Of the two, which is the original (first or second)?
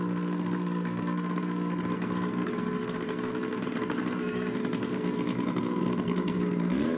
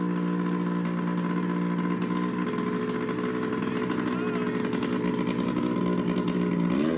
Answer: second